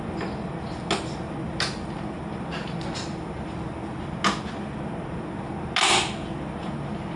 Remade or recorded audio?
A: recorded